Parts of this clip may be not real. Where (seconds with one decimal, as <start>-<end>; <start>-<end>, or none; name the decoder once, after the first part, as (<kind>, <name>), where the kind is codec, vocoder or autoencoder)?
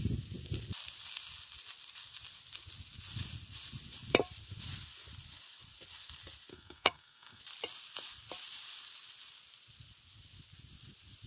6.5-7.4 (codec, SNAC)